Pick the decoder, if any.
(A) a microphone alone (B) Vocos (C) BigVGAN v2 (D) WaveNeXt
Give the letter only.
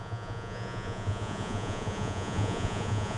B